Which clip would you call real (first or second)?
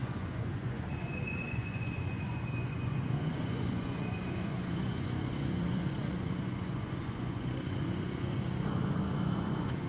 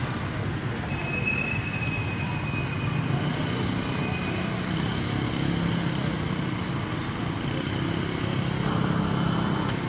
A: second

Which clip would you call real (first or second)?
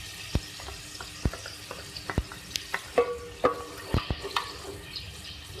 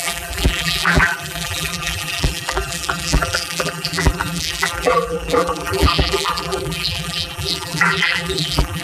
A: first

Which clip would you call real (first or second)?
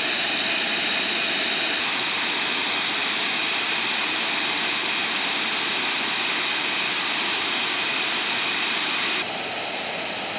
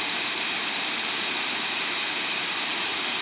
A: first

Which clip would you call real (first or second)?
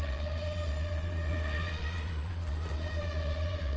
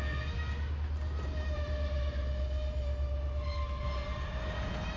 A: second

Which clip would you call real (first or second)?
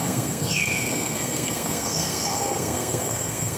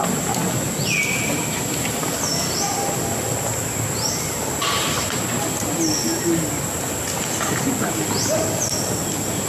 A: second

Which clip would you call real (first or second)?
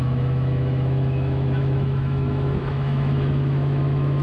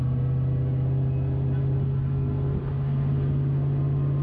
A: second